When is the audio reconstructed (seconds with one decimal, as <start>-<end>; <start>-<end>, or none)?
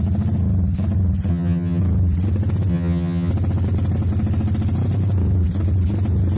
1.3-1.8; 2.7-3.3